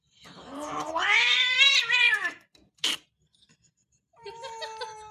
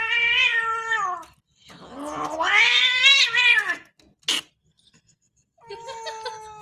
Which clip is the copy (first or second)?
first